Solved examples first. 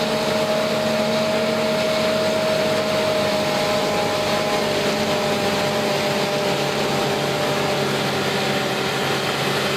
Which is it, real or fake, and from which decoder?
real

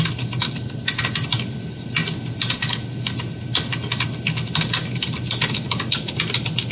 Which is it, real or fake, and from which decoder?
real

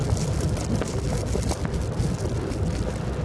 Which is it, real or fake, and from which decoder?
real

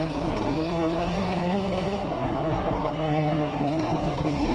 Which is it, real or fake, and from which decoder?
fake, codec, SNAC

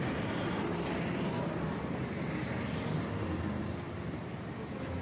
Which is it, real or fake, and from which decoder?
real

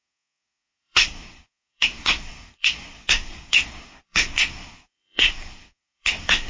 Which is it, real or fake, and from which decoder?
fake, codec, SNAC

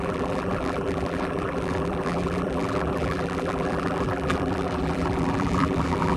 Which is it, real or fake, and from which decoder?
fake, vocoder, BigVGAN v2